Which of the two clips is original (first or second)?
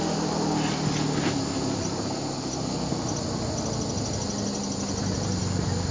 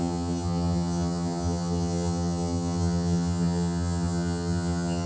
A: first